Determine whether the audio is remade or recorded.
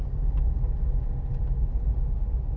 recorded